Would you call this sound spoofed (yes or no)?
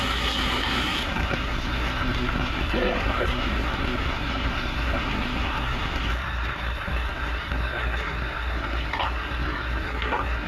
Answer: yes